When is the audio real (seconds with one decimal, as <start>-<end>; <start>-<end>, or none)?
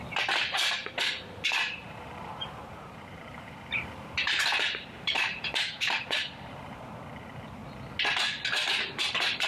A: 0.0-1.8; 5.9-9.5